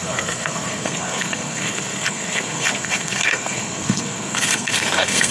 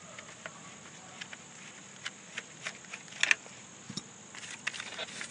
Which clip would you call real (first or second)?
second